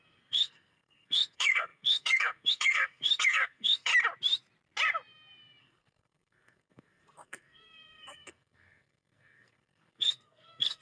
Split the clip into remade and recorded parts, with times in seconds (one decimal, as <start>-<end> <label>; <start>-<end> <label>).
0.0-3.9 remade; 3.9-5.6 recorded; 5.6-10.8 remade